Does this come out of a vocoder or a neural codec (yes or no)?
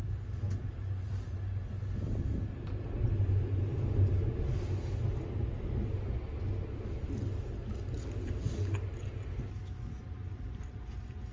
no